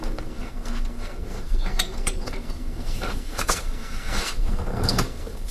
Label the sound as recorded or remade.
remade